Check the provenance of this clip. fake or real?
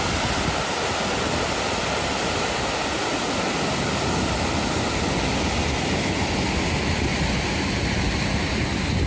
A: real